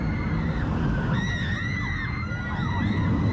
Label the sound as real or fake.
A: real